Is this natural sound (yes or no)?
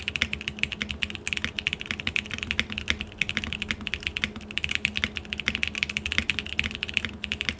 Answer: yes